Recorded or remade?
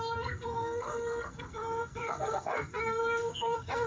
remade